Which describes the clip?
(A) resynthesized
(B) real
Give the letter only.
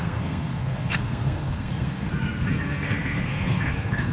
A